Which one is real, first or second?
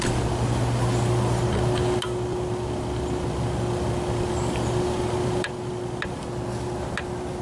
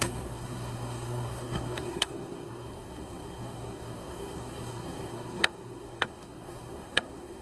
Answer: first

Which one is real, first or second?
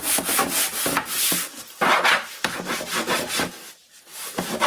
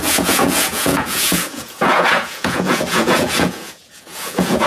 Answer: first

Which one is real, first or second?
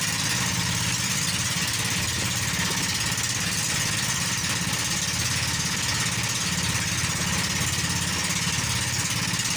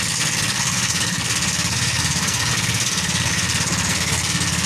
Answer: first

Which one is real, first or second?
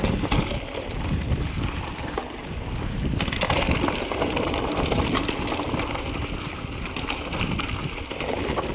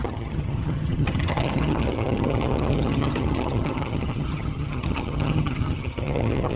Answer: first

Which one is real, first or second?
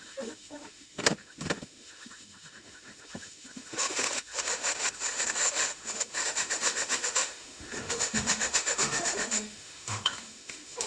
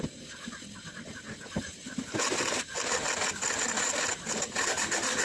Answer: second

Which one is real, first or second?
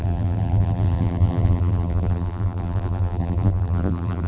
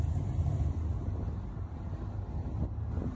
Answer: second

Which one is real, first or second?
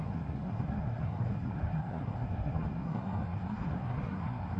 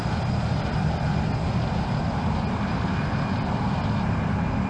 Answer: second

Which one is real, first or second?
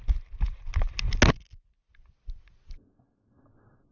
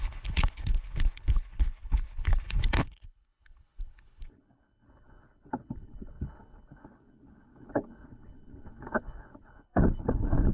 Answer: first